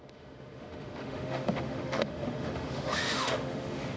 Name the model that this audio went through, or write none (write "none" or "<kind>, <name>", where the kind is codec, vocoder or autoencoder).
autoencoder, DAC-VAE